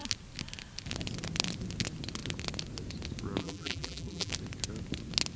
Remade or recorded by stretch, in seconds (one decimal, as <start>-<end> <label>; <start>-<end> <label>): 0.0-3.4 recorded; 3.4-4.3 remade; 4.3-5.4 recorded

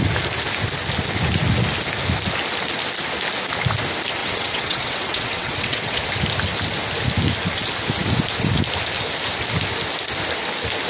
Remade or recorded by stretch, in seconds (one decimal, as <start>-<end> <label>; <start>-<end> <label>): 0.0-4.2 recorded; 4.2-6.1 remade; 6.1-10.9 recorded